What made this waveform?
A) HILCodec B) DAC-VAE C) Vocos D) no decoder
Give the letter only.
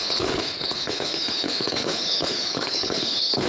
A